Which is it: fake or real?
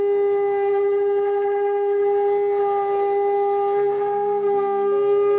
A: real